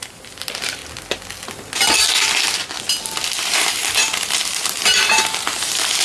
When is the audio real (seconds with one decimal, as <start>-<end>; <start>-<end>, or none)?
0.8-3.4

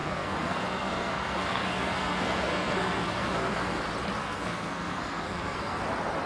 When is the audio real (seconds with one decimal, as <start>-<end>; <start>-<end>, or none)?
3.8-4.2; 5.8-6.3

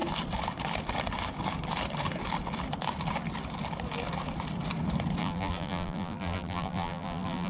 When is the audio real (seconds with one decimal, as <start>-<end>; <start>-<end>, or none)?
0.0-5.2

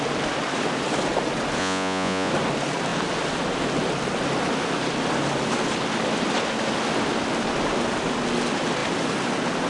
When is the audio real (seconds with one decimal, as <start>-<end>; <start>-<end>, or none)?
0.0-1.6; 2.3-9.7